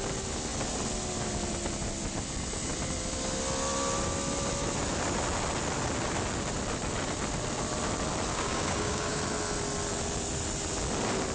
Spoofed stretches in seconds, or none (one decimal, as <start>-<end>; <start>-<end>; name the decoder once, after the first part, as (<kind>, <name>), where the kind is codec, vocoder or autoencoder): 8.3-9.2 (codec, DAC)